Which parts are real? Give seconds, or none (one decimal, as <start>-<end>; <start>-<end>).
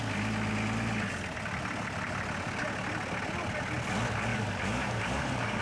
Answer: 0.0-4.3